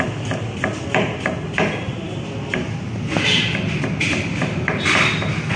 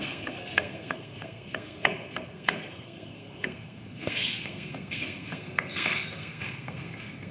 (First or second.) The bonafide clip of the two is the first